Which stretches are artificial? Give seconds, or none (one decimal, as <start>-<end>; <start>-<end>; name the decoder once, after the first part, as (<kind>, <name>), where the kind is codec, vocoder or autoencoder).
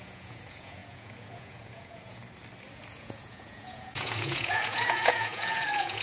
0.0-2.2 (vocoder, Vocos); 2.9-6.0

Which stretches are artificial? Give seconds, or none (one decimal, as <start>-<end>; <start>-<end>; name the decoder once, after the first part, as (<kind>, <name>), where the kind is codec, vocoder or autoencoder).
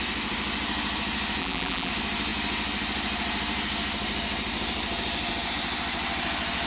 1.4-1.9 (vocoder, BigVGAN v2)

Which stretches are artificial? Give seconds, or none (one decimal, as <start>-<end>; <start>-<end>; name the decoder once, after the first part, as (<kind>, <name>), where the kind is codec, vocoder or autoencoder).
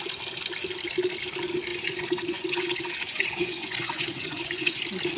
1.7-4.8 (vocoder, Vocos)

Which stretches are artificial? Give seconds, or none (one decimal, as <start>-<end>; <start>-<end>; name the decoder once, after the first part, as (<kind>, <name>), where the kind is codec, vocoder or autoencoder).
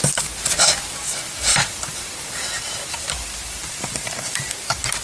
1.5-4.5 (vocoder, BigVGAN v2)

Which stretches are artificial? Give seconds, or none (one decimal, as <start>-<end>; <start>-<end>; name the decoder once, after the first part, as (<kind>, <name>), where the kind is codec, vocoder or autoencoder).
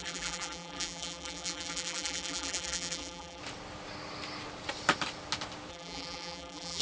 0.0-3.4 (vocoder, BigVGAN v2); 5.7-6.8